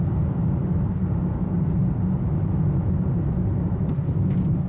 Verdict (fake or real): real